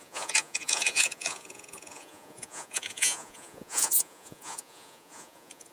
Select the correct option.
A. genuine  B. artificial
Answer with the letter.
B